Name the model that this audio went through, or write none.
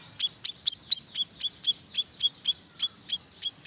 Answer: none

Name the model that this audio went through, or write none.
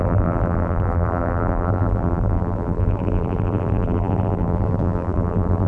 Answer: vocoder, BigVGAN v2